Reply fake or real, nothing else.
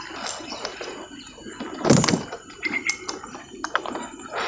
real